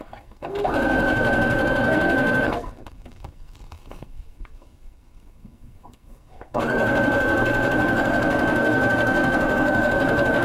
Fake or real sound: fake